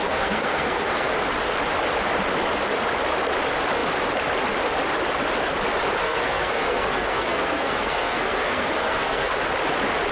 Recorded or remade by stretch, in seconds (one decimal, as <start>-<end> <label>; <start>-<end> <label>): 0.0-1.1 remade; 1.1-6.0 recorded; 6.0-9.3 remade; 9.3-10.1 recorded